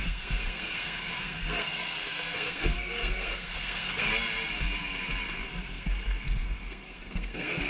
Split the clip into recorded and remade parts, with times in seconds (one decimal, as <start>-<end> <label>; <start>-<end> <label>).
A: 0.0-4.1 remade; 4.1-5.5 recorded; 5.5-7.7 remade